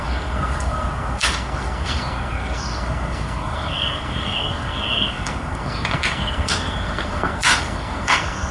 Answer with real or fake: fake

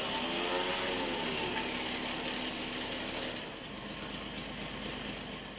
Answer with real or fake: real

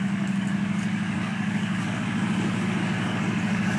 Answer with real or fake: fake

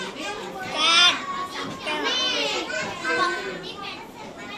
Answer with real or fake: real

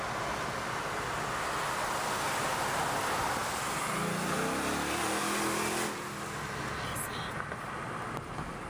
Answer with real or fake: real